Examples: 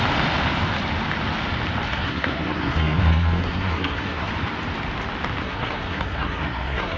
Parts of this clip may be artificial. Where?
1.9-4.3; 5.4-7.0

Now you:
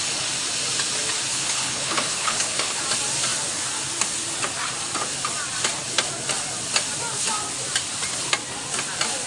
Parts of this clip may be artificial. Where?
1.3-2.8

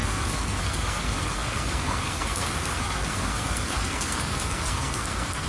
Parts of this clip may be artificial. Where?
0.0-5.5